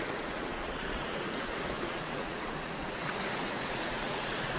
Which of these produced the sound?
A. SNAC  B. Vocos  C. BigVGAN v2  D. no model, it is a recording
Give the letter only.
B